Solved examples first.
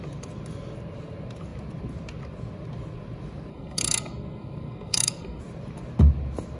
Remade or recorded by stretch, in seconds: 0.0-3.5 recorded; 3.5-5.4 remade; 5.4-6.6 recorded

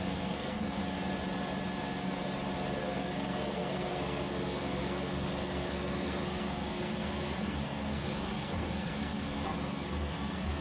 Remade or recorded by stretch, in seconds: 0.0-0.8 remade; 0.8-2.8 recorded; 2.8-10.6 remade

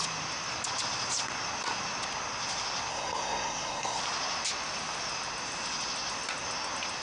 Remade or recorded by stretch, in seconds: 0.0-2.9 recorded; 2.9-4.0 remade; 4.0-7.0 recorded

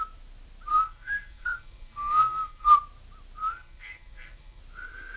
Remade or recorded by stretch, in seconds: 0.0-0.7 recorded; 0.7-2.7 remade; 2.7-3.5 recorded; 3.5-4.6 remade; 4.6-5.2 recorded